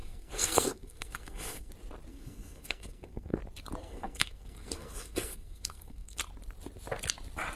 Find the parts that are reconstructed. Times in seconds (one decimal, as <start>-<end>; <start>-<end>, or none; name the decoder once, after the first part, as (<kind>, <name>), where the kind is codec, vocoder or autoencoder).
0.0-1.7 (codec, SNAC); 2.1-3.4; 3.8-6.2